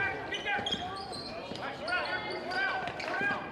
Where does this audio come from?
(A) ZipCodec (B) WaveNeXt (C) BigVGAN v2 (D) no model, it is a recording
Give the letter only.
D